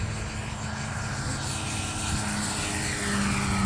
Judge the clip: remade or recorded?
recorded